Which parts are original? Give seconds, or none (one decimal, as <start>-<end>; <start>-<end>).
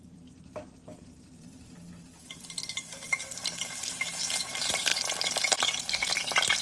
4.9-5.6